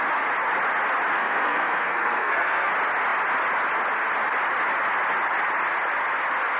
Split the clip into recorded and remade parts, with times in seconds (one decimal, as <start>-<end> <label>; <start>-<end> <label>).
0.0-1.1 recorded; 1.1-2.7 remade; 2.7-6.6 recorded